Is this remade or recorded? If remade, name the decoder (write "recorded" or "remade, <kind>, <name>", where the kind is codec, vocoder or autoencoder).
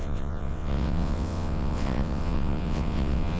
remade, vocoder, WaveNeXt